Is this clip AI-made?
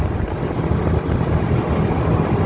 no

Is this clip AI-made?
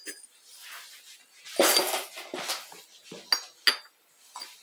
no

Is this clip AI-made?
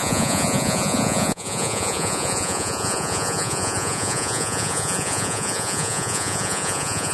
yes